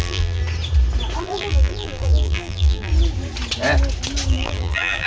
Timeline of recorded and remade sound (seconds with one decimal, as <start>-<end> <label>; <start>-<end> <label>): 0.0-0.4 remade; 0.4-1.2 recorded; 1.2-2.9 remade; 2.9-4.3 recorded; 4.3-5.1 remade

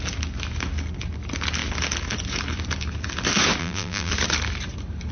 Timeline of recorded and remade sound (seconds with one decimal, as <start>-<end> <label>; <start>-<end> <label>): 0.0-3.6 recorded; 3.6-4.1 remade; 4.1-5.1 recorded

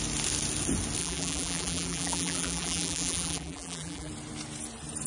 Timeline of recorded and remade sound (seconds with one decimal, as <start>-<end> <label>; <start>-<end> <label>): 0.0-1.0 recorded; 1.0-4.1 remade; 4.1-5.1 recorded

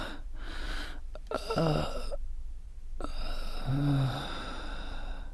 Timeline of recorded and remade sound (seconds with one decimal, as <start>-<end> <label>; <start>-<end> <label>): 0.0-1.2 remade; 1.2-4.4 recorded; 4.4-5.3 remade

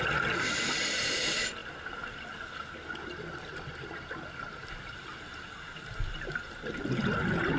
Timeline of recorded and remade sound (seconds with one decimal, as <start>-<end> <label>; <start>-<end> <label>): 0.0-4.5 recorded; 4.5-6.8 remade; 6.8-7.6 recorded